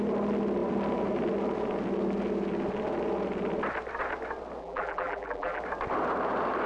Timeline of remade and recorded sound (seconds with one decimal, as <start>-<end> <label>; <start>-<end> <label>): 0.0-4.6 recorded; 4.6-5.6 remade; 5.6-6.7 recorded